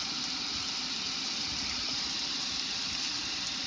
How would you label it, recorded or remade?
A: recorded